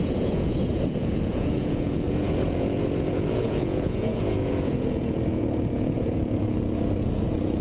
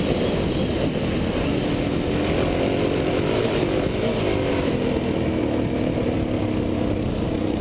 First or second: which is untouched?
second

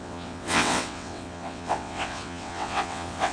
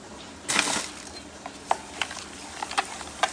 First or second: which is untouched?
second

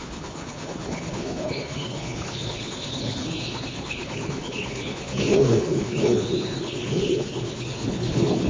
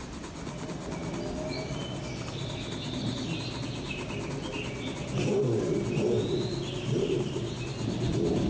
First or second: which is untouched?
second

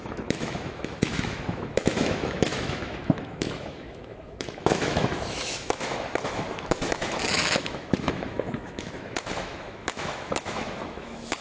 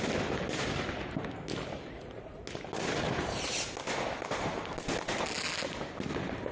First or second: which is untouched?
second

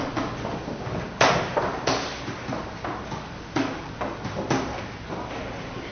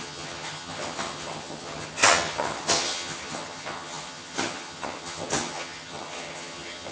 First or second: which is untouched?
first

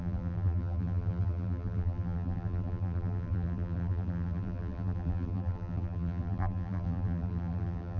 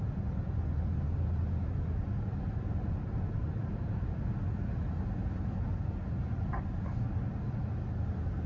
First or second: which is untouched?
second